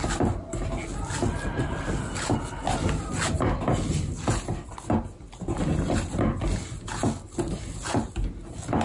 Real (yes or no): yes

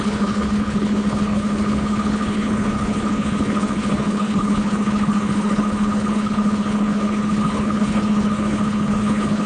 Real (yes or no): no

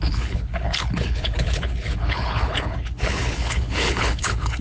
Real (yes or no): no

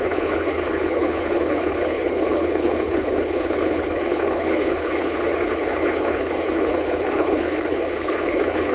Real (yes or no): no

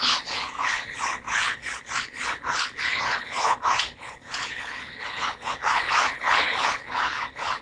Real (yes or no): no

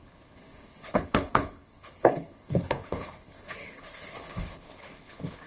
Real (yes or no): no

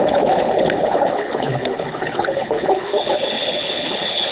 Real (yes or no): no